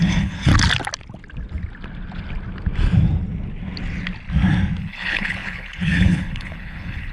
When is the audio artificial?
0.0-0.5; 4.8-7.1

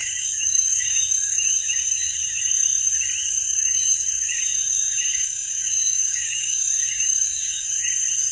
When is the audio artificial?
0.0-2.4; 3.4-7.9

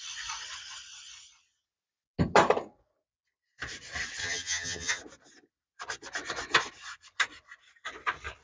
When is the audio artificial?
4.2-5.0

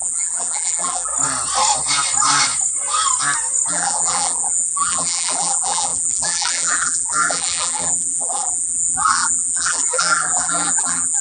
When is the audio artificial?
0.0-1.1; 3.7-11.2